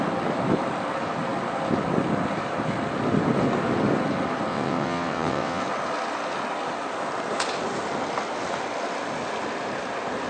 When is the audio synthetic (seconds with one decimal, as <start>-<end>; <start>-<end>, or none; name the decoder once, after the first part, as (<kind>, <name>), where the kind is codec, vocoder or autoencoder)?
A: 4.5-5.6 (vocoder, WaveNeXt)